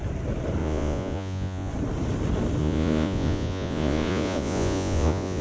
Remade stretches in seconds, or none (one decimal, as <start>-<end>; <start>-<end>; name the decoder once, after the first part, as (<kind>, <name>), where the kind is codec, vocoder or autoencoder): 0.6-1.7 (vocoder, Vocos); 2.6-5.4